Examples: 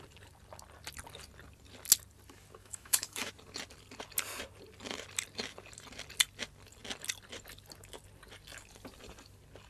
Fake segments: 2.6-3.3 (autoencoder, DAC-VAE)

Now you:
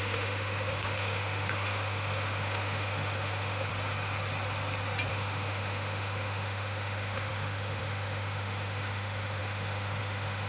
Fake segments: 0.0-3.7 (autoencoder, DAC-VAE); 5.1-10.5

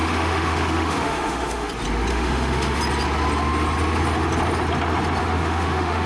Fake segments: 0.0-1.7 (autoencoder, DAC-VAE); 2.1-2.8; 5.2-6.1